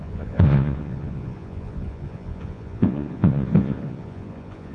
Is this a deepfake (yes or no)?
yes